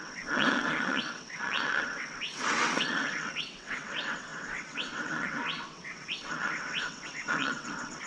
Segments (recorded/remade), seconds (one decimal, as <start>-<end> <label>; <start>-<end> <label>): 0.0-8.1 remade